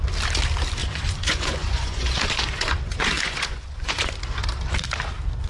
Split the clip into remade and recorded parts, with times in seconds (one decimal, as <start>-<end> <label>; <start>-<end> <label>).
0.0-0.8 recorded; 0.8-4.1 remade; 4.1-5.5 recorded